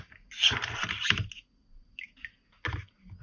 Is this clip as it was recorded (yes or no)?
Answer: yes